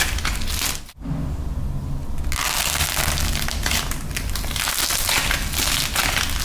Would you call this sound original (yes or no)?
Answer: yes